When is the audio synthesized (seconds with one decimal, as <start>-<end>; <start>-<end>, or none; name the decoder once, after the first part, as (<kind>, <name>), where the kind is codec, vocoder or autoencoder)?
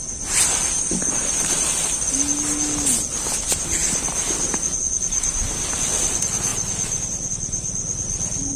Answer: none